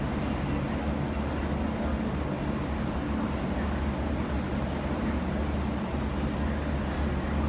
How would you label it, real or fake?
real